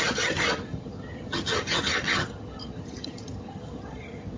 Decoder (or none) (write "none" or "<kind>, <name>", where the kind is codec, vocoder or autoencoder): vocoder, HiFi-GAN